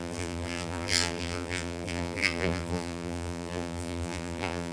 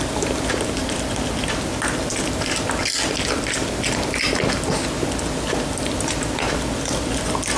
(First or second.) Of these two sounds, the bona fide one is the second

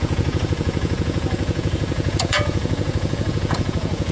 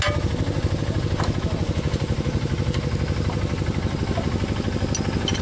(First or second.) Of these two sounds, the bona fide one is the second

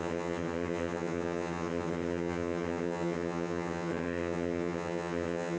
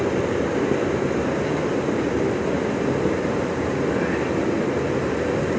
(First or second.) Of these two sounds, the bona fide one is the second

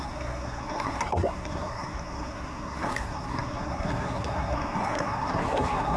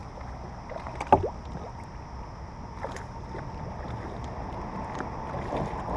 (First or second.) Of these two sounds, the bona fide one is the second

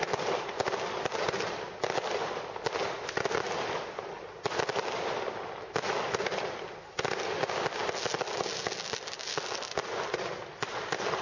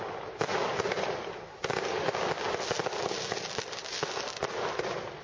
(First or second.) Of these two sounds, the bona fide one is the first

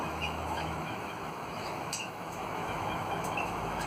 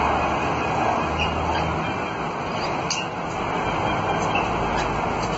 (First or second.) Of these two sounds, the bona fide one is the second